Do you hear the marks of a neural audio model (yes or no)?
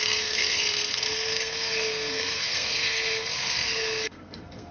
yes